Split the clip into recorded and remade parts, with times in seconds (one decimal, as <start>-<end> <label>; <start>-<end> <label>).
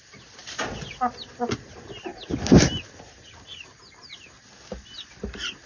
0.0-5.7 recorded